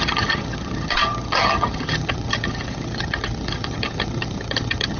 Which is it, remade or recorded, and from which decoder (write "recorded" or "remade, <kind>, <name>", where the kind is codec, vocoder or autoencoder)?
remade, vocoder, HiFi-GAN